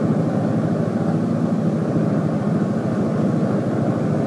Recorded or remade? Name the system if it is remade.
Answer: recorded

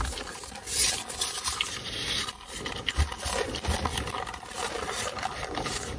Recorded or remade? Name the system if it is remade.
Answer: recorded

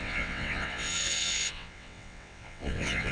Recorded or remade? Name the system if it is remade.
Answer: remade, vocoder, WaveNeXt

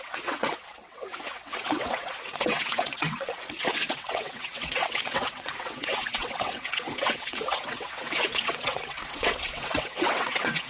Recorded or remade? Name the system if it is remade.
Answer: remade, vocoder, WaveNeXt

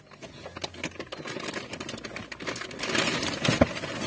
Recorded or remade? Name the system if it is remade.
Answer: recorded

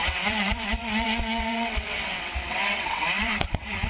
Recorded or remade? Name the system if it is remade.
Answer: remade, vocoder, WaveNeXt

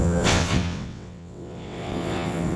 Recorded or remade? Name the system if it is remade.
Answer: remade, vocoder, WaveNeXt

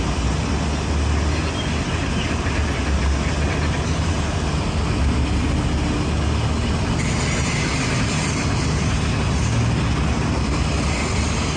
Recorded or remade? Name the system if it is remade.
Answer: recorded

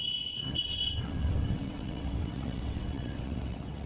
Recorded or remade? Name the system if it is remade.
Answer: remade, vocoder, WaveNeXt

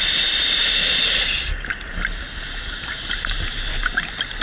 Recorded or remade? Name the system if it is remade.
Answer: recorded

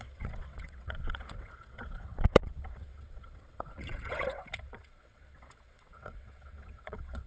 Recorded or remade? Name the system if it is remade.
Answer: remade, vocoder, WaveNeXt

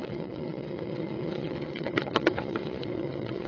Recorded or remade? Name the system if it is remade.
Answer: remade, vocoder, WaveNeXt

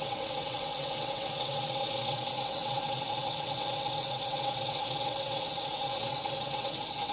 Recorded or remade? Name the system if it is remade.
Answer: remade, vocoder, WaveNeXt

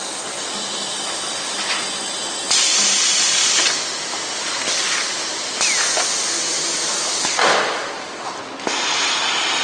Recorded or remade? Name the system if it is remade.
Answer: recorded